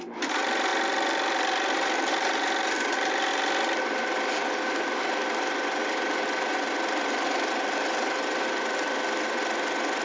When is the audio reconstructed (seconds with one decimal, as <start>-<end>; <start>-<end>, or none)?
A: 0.0-10.0